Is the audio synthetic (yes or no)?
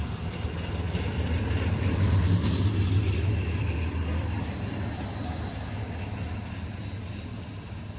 no